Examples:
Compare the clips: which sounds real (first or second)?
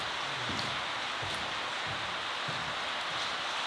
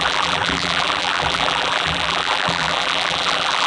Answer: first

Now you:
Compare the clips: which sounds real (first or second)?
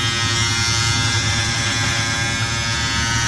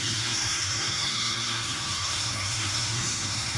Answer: first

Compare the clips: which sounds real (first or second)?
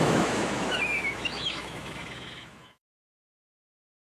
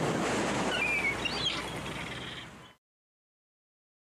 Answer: second